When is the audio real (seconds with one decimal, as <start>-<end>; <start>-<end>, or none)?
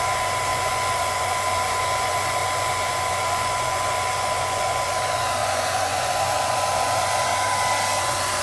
7.3-8.0